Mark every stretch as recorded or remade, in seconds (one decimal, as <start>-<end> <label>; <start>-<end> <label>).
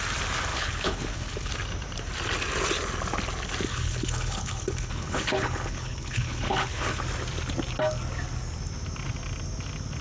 0.0-0.5 recorded; 0.5-1.5 remade; 1.5-3.7 recorded; 3.7-7.0 remade; 7.0-10.0 recorded